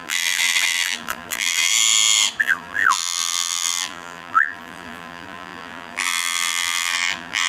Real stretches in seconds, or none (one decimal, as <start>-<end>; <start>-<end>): 1.7-2.4